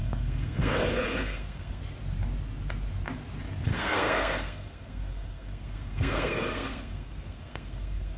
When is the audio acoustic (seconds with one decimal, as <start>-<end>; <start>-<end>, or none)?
1.8-3.7